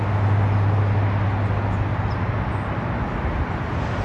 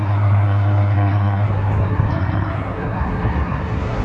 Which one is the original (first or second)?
first